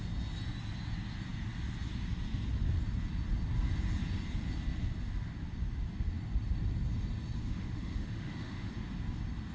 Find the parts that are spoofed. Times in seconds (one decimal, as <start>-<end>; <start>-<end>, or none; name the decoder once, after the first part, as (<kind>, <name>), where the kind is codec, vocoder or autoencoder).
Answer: 7.4-8.7 (autoencoder, DAC-VAE)